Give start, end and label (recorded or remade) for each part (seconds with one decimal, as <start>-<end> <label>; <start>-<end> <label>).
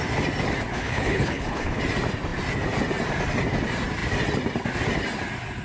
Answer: 0.0-0.7 recorded; 0.7-1.8 remade; 1.8-5.6 recorded